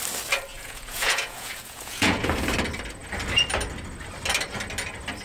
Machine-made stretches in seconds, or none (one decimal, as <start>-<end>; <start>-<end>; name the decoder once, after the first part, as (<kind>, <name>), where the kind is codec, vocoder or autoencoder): 0.5-2.3 (vocoder, Vocos)